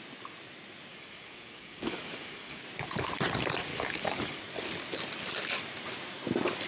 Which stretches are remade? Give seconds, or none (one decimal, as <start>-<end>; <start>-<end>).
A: 0.9-2.6; 3.7-4.4